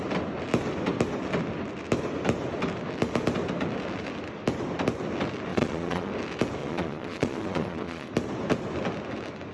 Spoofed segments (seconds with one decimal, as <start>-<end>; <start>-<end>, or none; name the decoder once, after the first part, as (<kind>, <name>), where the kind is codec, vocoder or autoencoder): 5.5-6.1 (vocoder, Vocos); 6.6-8.1